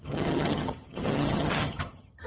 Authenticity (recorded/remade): remade